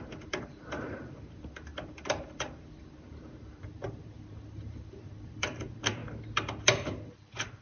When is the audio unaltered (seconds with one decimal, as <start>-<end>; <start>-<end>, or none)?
6.0-6.6